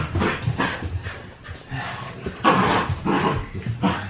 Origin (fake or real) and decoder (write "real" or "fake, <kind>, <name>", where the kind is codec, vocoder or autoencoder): real